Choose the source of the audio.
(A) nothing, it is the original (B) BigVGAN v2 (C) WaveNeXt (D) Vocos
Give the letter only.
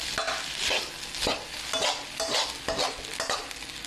A